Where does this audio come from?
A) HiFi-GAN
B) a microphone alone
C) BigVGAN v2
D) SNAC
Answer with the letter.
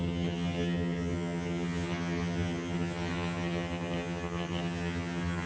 A